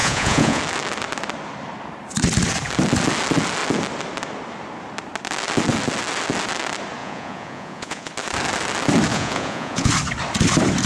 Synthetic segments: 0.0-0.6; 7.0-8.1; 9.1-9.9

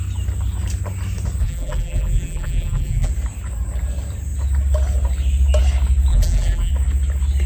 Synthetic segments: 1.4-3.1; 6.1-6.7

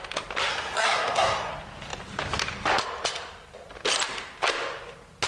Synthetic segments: 0.5-1.5

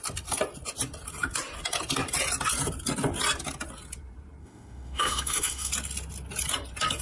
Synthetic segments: 4.4-5.7

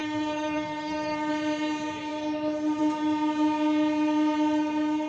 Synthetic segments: 0.0-1.3

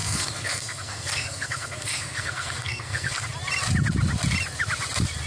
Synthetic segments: 0.0-3.2

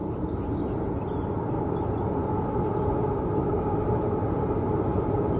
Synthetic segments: 3.4-3.9